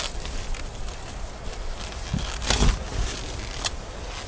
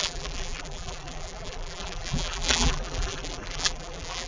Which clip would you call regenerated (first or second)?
second